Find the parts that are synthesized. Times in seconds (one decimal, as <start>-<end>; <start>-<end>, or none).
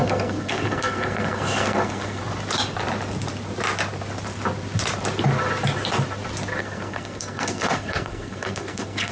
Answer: 0.0-2.2; 6.6-9.1